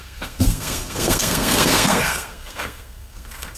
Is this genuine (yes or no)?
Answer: no